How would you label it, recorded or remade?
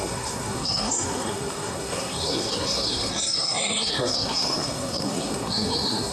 remade